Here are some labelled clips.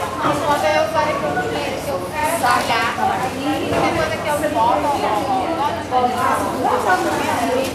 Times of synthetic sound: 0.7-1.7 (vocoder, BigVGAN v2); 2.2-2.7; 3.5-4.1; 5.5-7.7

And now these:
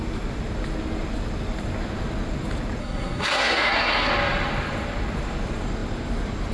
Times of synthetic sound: 2.8-4.1 (codec, SNAC)

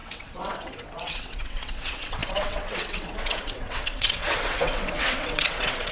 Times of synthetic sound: 0.0-5.9 (vocoder, WaveNeXt)